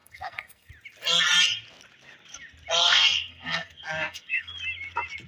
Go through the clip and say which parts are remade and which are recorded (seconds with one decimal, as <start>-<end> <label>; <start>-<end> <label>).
0.0-0.7 remade; 0.7-2.8 recorded; 2.8-4.5 remade; 4.5-5.3 recorded